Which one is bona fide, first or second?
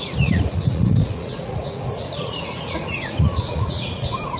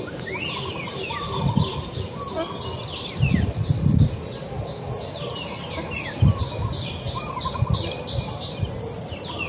second